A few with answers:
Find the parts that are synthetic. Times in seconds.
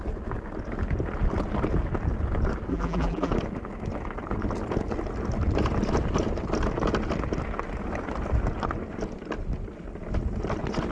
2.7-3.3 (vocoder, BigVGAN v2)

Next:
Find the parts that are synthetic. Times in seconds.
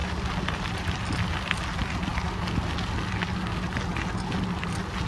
0.0-1.0 (vocoder, BigVGAN v2)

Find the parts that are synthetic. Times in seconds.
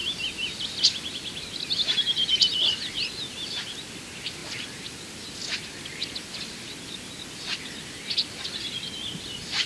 0.0-1.4 (vocoder, BigVGAN v2); 2.2-3.5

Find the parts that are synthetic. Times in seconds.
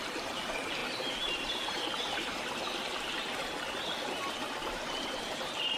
0.0-0.8 (vocoder, BigVGAN v2); 4.3-5.8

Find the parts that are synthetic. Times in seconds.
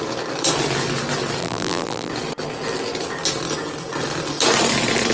1.4-2.1 (vocoder, BigVGAN v2)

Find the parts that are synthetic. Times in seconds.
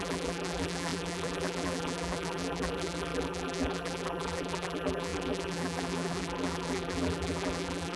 0.0-8.0 (vocoder, BigVGAN v2)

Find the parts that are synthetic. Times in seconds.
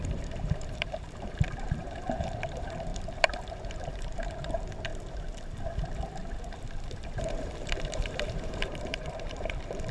0.0-4.9 (vocoder, BigVGAN v2); 6.8-9.9